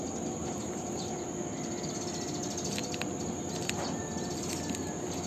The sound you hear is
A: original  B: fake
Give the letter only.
A